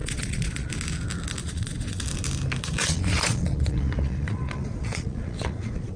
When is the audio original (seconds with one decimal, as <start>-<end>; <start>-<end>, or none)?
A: 0.7-1.4; 2.0-2.8